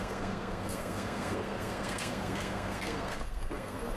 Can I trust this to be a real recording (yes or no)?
no